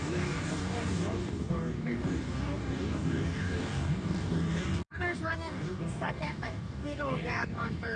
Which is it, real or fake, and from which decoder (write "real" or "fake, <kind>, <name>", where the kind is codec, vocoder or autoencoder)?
fake, codec, DAC